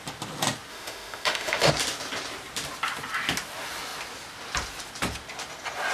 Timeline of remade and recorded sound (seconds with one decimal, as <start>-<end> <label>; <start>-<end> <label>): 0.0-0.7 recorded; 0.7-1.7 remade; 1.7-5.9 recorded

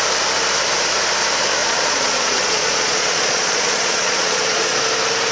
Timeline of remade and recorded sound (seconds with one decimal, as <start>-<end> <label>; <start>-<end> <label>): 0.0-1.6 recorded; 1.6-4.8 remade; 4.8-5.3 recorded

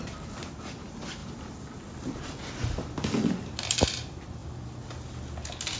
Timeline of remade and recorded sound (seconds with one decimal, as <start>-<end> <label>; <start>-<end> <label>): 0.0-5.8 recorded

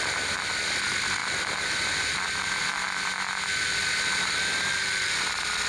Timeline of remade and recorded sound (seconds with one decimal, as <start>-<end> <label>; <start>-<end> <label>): 0.0-5.7 recorded

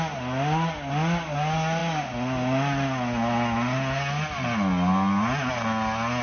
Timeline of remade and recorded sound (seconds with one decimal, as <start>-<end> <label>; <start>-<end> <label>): 0.0-6.2 recorded

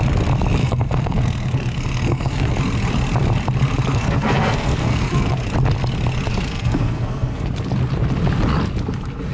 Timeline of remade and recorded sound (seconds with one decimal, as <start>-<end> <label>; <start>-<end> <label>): 0.0-0.6 recorded; 0.6-2.5 remade; 2.5-3.9 recorded; 3.9-5.4 remade; 5.4-6.3 recorded; 6.3-7.5 remade; 7.5-9.3 recorded

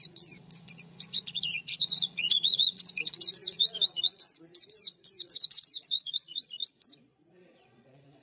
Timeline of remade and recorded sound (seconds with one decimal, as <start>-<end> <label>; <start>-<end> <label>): 0.0-8.2 remade